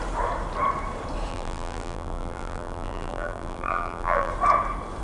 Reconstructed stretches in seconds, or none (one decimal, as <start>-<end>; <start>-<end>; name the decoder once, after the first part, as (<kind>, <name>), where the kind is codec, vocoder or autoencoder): 1.3-4.3 (vocoder, BigVGAN v2)